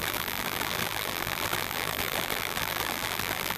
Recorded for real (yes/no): no